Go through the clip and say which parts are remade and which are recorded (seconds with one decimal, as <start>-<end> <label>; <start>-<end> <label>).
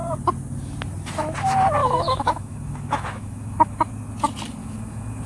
0.0-1.8 recorded; 1.8-3.9 remade; 3.9-4.6 recorded; 4.6-5.3 remade